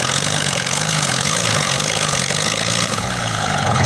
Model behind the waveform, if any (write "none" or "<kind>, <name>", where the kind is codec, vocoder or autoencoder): codec, HILCodec